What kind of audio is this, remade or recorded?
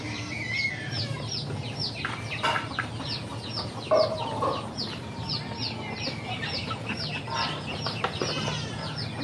recorded